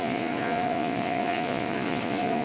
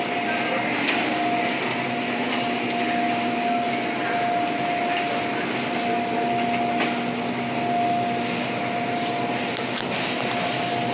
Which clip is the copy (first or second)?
first